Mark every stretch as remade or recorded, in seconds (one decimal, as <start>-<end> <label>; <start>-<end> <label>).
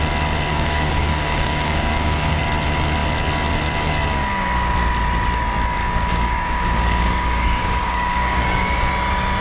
0.0-0.5 recorded; 0.5-2.4 remade; 2.4-5.8 recorded; 5.8-8.9 remade; 8.9-9.4 recorded